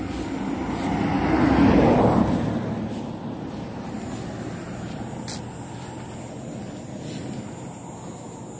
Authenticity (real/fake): real